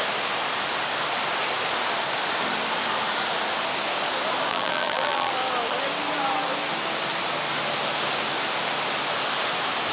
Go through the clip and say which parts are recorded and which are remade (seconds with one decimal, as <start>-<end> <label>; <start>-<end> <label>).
0.0-4.5 recorded; 4.5-5.3 remade; 5.3-9.9 recorded